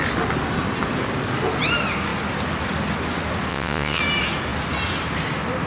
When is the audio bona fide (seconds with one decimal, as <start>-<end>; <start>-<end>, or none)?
0.0-3.5; 4.0-5.7